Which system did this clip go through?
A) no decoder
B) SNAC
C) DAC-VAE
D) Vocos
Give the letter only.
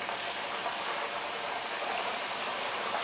A